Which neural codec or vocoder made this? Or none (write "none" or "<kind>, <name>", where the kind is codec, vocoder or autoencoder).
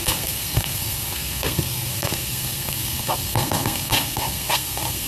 codec, SNAC